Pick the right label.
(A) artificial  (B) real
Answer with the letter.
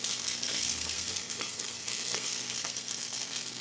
A